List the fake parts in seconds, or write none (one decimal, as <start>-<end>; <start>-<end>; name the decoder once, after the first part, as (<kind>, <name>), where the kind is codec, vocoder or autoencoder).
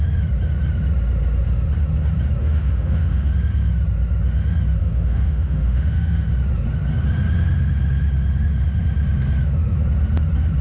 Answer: 2.4-3.3 (autoencoder, DAC-VAE); 4.8-6.3